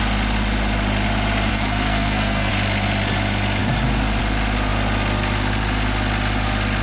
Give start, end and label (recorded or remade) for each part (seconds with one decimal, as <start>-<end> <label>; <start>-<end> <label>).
0.0-1.5 recorded; 1.5-2.5 remade; 2.5-6.8 recorded